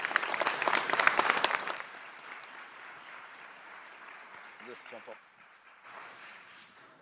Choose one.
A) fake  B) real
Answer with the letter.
A